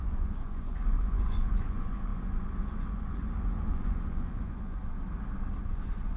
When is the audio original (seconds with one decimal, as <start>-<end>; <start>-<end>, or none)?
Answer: 4.8-5.6